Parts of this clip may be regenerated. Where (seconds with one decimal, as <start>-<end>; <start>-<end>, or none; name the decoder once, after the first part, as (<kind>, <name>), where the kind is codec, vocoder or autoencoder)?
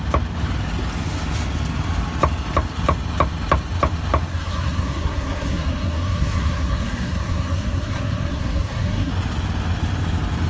4.3-9.1 (codec, SNAC)